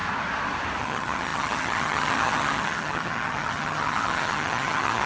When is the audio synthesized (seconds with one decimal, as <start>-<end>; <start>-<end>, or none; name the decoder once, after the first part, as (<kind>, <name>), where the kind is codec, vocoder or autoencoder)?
0.8-5.1 (vocoder, HiFi-GAN)